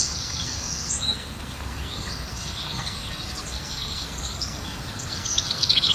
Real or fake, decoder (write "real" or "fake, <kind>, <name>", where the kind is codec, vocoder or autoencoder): fake, codec, SNAC